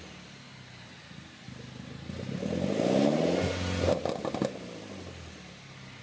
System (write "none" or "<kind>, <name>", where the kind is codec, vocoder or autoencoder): none